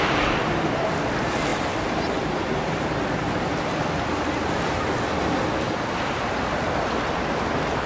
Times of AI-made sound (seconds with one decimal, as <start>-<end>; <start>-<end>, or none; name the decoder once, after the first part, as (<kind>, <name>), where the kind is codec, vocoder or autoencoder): none